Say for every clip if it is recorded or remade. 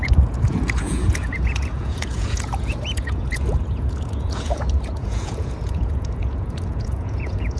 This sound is remade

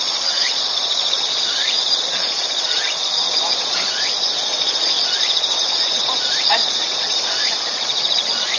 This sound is remade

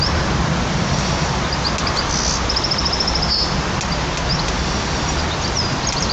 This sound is recorded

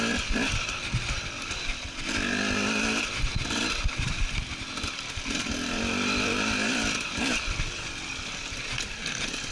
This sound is recorded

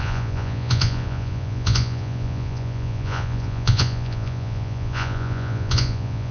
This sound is remade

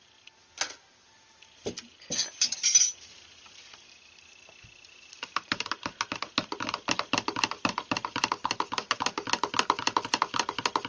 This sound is recorded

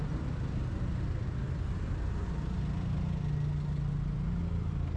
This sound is recorded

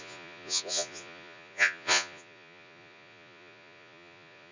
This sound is remade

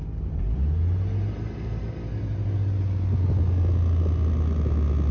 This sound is recorded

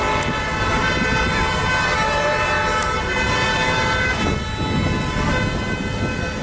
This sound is recorded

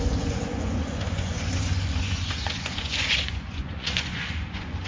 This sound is remade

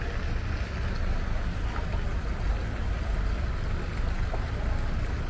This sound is recorded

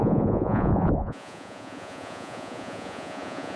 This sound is remade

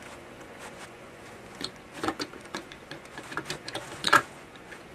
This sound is remade